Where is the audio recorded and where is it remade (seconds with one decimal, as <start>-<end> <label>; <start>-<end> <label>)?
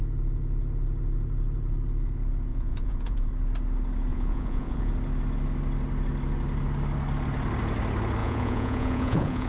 0.0-2.5 recorded; 2.5-3.3 remade; 3.3-4.1 recorded; 4.1-4.9 remade; 4.9-8.2 recorded; 8.2-9.5 remade